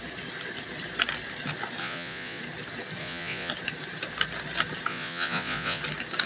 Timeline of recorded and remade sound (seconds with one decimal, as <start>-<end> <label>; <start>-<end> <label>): 0.0-1.8 recorded; 1.8-2.4 remade; 2.4-3.0 recorded; 3.0-3.5 remade; 3.5-4.9 recorded; 4.9-5.8 remade; 5.8-6.3 recorded